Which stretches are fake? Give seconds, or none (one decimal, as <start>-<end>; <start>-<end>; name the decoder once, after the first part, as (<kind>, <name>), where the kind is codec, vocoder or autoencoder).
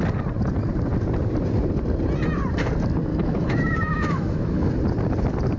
3.1-4.7 (autoencoder, DAC-VAE)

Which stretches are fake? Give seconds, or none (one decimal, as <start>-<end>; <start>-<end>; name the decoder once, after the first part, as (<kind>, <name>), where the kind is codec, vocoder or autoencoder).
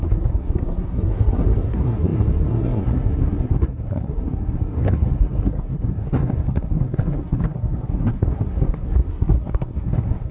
0.0-10.3 (codec, SNAC)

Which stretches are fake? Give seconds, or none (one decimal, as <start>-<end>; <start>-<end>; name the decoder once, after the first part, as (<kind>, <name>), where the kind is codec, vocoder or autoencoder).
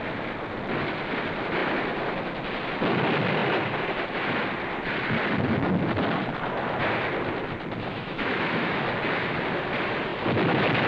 7.9-8.7 (autoencoder, DAC-VAE)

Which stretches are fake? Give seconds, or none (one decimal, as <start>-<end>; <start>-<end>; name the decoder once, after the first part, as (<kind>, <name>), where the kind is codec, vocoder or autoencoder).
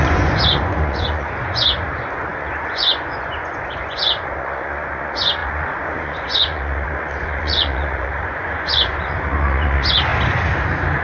0.0-10.1 (vocoder, Vocos)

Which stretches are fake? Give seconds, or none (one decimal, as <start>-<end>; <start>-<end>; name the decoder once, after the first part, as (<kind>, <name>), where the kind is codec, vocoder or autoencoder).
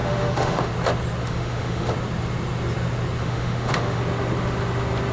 0.0-0.7 (autoencoder, DAC-VAE); 1.2-1.9; 3.2-4.0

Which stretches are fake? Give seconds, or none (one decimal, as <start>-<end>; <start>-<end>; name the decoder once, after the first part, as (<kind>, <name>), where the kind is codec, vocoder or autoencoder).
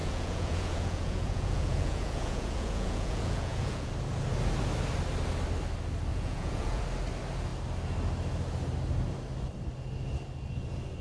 0.0-3.9 (vocoder, Vocos); 6.1-6.8